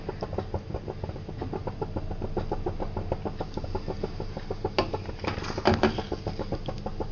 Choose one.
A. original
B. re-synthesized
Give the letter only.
A